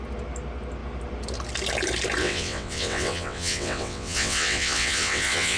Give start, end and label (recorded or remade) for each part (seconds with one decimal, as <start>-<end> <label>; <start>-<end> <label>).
0.0-2.2 recorded; 2.2-5.6 remade